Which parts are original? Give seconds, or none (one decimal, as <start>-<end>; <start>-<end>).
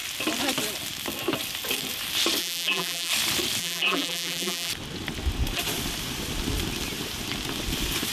0.0-2.4; 3.1-3.6; 4.7-8.1